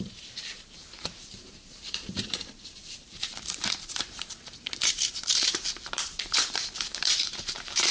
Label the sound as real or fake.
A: fake